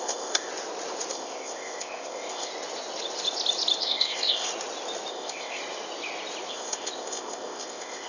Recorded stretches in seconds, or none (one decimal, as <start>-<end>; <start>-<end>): 0.5-1.1; 2.5-3.8; 4.5-5.1; 5.6-6.5